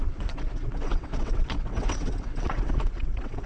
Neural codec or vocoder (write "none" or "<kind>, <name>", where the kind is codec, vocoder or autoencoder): vocoder, WaveNeXt